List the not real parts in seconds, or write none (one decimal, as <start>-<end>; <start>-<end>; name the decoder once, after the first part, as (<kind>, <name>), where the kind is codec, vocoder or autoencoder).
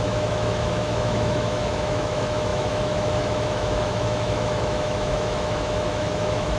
0.0-6.6 (autoencoder, DAC-VAE)